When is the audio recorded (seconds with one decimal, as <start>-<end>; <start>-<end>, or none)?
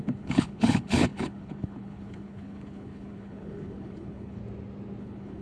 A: 4.4-5.0